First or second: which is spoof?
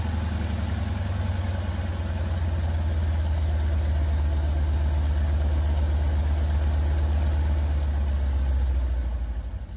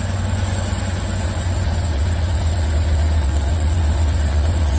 second